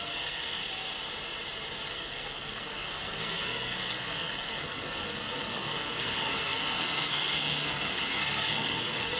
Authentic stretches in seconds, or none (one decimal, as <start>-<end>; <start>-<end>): 0.6-1.9